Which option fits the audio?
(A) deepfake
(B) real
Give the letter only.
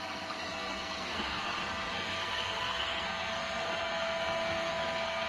A